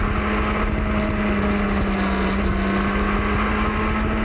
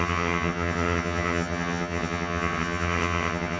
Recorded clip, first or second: first